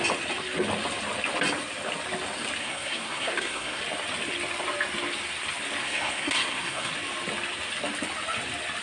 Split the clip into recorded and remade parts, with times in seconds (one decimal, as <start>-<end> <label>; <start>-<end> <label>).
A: 0.0-2.6 recorded; 2.6-3.8 remade; 3.8-5.8 recorded; 5.8-6.9 remade; 6.9-8.8 recorded